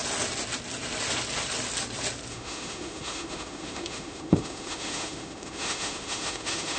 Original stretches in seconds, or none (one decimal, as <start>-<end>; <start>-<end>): 0.0-2.3